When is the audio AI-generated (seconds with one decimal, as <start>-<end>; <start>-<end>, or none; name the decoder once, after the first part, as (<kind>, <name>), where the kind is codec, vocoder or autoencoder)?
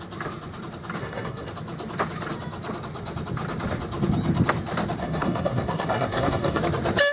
1.0-1.5 (codec, SNAC); 5.0-6.6